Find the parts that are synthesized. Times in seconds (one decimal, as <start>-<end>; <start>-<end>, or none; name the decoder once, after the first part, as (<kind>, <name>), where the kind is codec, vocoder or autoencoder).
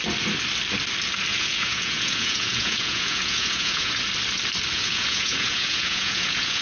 1.3-3.9 (vocoder, Vocos); 4.7-6.6